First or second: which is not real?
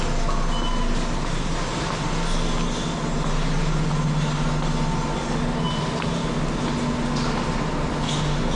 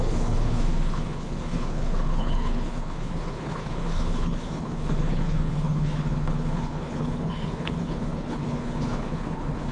second